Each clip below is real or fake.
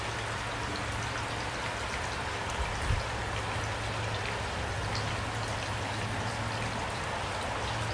real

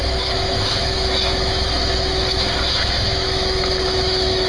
fake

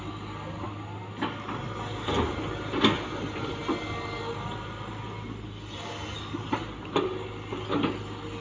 real